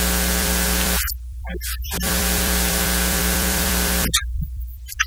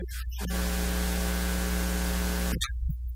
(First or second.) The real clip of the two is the second